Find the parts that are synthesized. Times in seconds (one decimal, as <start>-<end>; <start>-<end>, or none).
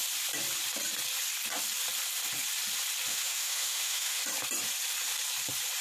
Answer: 3.1-4.2